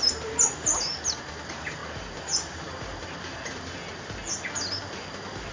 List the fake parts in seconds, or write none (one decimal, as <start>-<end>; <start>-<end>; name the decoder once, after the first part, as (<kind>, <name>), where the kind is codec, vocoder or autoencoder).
none